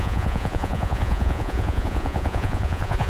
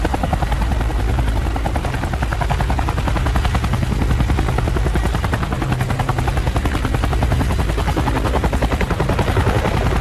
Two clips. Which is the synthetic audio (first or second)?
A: first